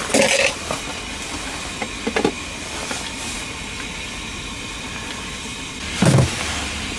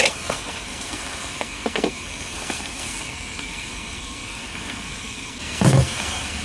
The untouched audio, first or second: first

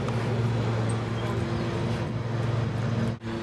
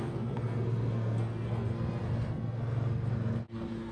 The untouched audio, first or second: first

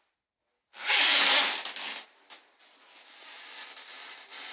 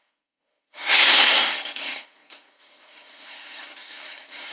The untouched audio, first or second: first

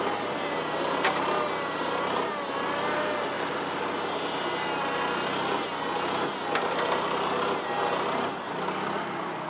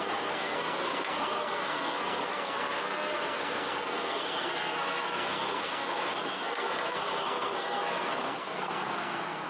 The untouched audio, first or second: first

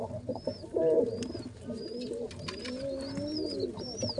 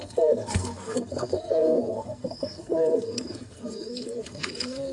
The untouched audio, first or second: first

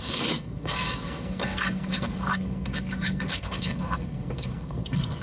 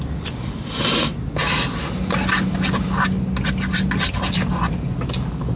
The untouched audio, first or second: second